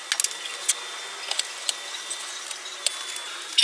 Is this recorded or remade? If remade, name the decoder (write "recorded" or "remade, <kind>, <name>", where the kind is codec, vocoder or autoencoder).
recorded